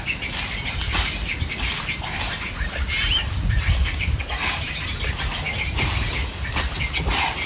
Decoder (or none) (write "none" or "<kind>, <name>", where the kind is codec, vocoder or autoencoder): none